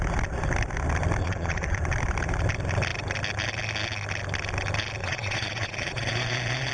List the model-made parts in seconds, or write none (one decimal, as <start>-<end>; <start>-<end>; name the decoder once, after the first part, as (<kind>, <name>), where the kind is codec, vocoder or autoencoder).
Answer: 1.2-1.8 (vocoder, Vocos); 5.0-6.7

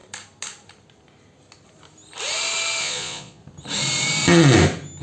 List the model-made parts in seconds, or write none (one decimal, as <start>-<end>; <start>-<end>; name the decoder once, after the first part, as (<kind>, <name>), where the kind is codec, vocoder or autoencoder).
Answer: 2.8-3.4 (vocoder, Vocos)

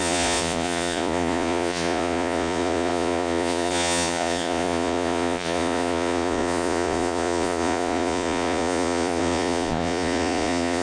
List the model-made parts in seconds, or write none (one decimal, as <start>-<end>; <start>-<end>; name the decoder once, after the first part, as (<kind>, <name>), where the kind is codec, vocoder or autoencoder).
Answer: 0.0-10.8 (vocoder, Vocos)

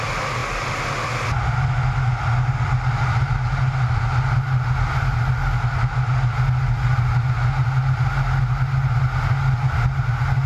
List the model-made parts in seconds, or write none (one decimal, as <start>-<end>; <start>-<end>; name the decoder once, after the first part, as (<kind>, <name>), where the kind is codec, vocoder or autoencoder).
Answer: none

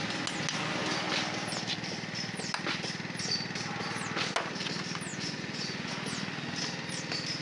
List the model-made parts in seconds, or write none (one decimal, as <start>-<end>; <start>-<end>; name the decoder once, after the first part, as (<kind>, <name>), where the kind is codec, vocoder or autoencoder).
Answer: 5.1-5.9 (vocoder, Vocos)

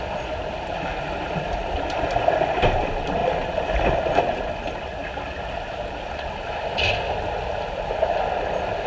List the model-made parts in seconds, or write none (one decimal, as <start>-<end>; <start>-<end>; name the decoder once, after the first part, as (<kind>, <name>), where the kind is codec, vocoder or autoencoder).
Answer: none